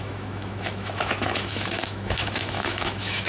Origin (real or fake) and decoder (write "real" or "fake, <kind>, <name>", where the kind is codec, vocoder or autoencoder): fake, autoencoder, DAC-VAE